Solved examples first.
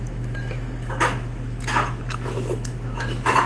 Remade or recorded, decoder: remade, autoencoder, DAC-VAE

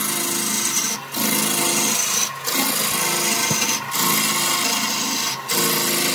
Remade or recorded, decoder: recorded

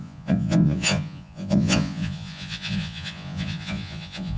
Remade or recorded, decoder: remade, vocoder, Vocos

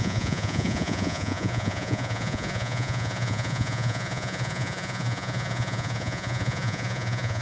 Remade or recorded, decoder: remade, vocoder, Vocos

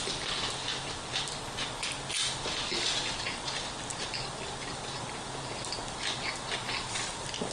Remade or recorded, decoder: recorded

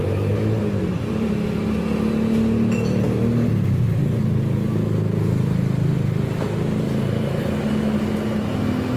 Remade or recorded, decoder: recorded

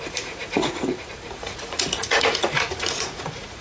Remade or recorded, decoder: remade, vocoder, Vocos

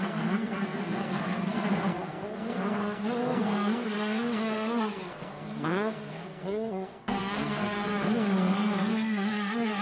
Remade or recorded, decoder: remade, codec, SNAC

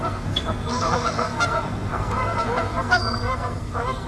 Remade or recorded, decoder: remade, codec, SNAC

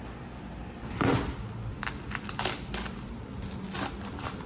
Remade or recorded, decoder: recorded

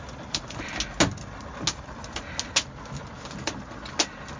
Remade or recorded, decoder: recorded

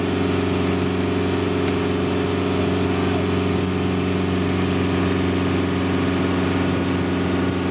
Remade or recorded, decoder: recorded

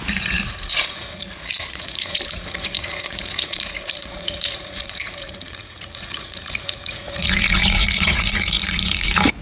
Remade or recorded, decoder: remade, vocoder, Vocos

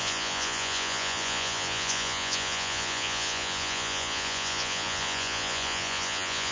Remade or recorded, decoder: remade, vocoder, Vocos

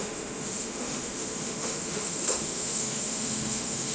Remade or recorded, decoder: remade, autoencoder, DAC-VAE